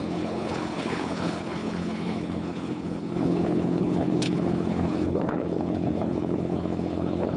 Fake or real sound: fake